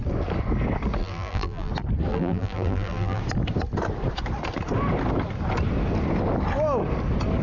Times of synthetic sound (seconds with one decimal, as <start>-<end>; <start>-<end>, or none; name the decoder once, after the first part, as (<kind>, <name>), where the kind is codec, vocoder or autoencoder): 1.0-1.7 (vocoder, BigVGAN v2); 2.1-3.2